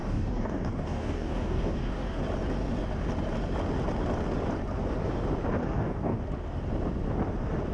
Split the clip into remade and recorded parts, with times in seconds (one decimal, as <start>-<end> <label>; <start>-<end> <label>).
0.0-2.2 remade; 2.2-5.6 recorded; 5.6-6.2 remade; 6.2-7.7 recorded